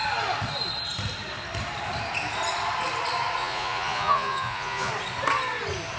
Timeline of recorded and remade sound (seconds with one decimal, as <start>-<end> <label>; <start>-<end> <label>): 0.0-3.4 recorded; 3.4-4.9 remade; 4.9-6.0 recorded